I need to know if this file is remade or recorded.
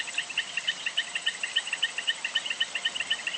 recorded